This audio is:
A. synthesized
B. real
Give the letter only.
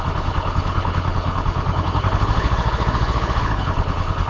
A